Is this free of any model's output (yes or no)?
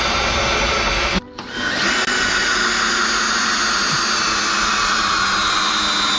yes